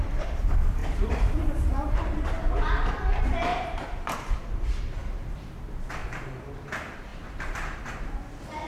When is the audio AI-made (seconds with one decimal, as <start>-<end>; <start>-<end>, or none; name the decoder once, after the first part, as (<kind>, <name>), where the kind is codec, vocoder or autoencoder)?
0.8-2.9 (vocoder, BigVGAN v2); 3.5-4.8; 6.0-6.6; 7.1-7.8

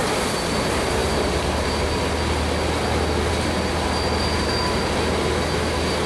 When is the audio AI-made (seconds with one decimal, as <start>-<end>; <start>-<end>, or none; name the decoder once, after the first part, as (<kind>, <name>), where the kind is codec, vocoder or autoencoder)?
none

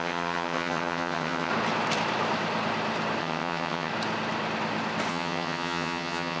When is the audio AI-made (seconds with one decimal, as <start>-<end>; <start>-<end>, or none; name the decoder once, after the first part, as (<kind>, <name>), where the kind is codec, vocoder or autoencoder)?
0.0-1.5 (vocoder, HiFi-GAN); 3.2-3.9; 5.1-6.4

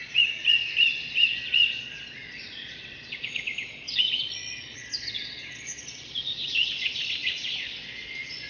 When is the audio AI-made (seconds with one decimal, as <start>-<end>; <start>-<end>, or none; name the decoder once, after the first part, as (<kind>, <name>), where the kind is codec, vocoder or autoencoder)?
0.0-8.5 (vocoder, Vocos)

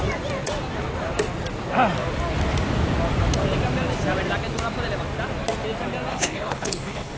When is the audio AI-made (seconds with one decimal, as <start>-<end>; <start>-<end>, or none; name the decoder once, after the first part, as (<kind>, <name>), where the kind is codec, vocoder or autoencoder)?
6.1-7.2 (codec, HILCodec)